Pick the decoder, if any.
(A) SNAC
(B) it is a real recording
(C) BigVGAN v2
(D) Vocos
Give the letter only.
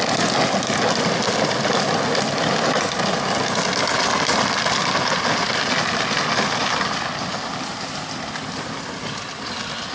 B